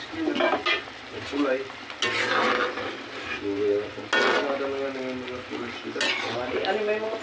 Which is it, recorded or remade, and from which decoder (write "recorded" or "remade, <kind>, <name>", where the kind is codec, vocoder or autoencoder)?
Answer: recorded